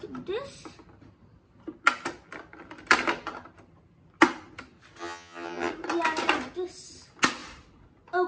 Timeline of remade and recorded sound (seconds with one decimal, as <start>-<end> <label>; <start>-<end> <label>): 0.0-5.0 recorded; 5.0-5.7 remade; 5.7-8.3 recorded